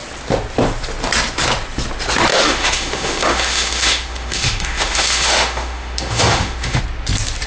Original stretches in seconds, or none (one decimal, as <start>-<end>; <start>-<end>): 0.0-2.3; 6.8-7.5